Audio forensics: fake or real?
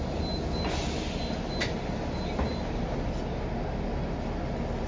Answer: real